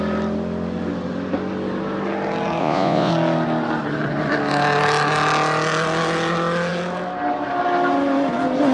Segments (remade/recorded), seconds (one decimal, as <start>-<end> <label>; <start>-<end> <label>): 0.0-2.6 recorded; 2.6-3.1 remade; 3.1-8.7 recorded